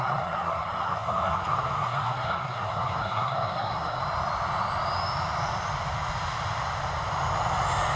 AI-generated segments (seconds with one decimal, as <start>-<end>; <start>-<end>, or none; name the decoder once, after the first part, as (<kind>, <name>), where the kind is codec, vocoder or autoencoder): 0.0-4.0 (codec, SNAC)